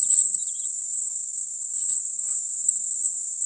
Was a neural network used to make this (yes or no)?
yes